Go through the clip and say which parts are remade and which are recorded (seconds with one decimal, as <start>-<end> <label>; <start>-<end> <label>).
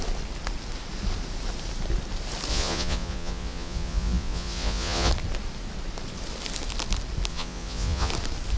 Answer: 0.0-2.5 recorded; 2.5-5.1 remade; 5.1-7.3 recorded; 7.3-8.1 remade; 8.1-8.6 recorded